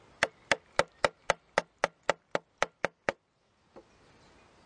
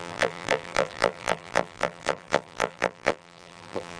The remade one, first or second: second